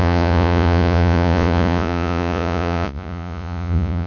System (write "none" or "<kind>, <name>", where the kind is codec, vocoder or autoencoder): vocoder, Vocos